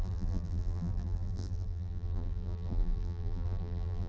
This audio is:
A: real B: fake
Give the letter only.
B